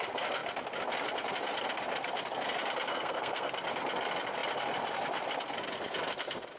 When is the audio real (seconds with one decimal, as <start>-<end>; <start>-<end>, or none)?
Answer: 0.0-2.9; 3.5-6.6